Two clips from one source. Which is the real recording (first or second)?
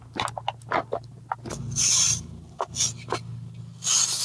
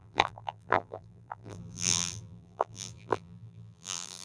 first